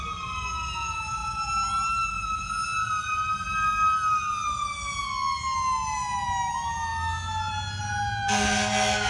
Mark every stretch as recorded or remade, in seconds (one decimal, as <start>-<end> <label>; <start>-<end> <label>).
0.0-9.1 recorded